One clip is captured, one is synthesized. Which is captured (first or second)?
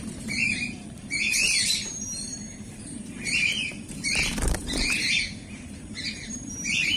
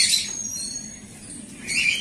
second